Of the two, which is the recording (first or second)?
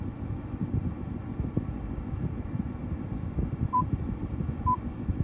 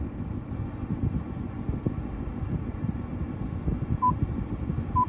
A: second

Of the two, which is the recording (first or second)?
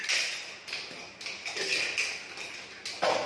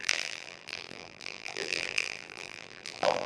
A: first